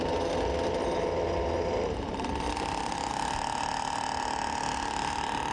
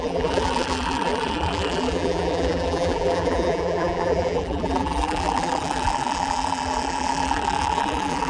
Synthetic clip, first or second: second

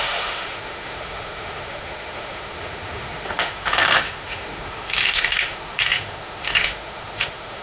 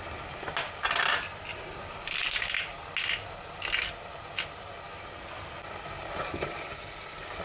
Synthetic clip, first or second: first